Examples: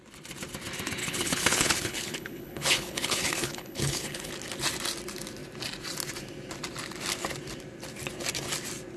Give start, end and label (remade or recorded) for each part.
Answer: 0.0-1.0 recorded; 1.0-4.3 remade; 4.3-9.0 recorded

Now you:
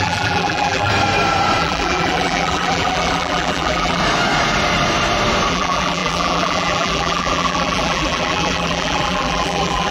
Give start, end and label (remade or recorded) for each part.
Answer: 0.0-0.9 remade; 0.9-1.6 recorded; 1.6-4.0 remade; 4.0-5.5 recorded; 5.5-9.9 remade

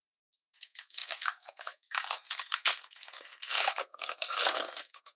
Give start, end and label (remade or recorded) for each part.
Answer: 0.0-5.2 remade